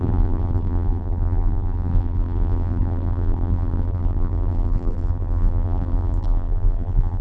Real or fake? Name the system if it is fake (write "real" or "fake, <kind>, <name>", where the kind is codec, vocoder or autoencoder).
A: fake, vocoder, BigVGAN v2